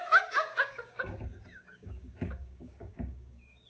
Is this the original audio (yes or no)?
no